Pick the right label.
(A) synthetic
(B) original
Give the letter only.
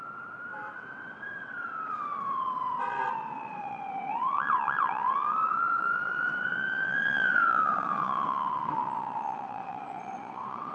A